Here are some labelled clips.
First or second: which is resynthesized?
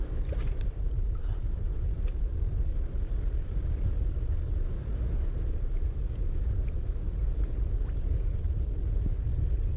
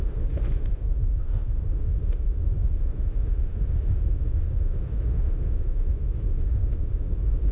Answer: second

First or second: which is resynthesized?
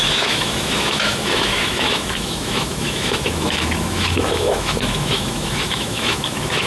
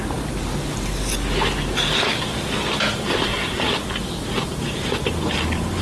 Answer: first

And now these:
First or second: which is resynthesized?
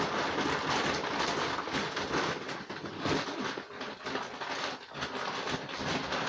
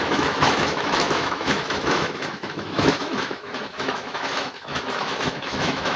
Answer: second